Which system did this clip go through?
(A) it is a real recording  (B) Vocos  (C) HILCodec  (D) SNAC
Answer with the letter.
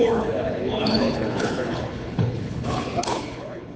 C